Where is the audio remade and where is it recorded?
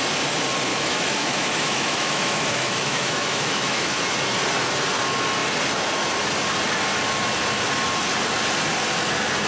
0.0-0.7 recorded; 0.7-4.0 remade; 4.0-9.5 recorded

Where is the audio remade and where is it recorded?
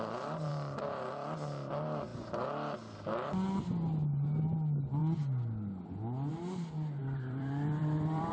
0.0-0.5 recorded; 0.5-1.1 remade; 1.1-7.0 recorded; 7.0-8.3 remade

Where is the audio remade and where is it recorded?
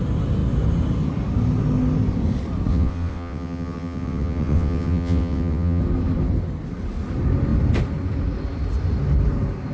0.0-2.7 recorded; 2.7-5.8 remade; 5.8-9.7 recorded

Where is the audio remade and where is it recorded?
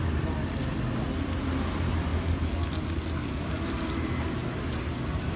0.0-5.4 recorded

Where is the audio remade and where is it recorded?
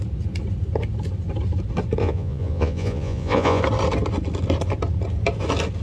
0.0-2.0 recorded; 2.0-3.6 remade; 3.6-5.8 recorded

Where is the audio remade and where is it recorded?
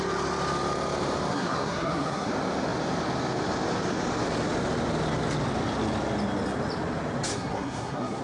0.0-1.3 recorded; 1.3-2.3 remade; 2.3-7.3 recorded; 7.3-8.2 remade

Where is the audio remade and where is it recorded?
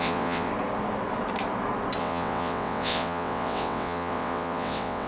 0.0-0.5 remade; 0.5-2.0 recorded; 2.0-5.1 remade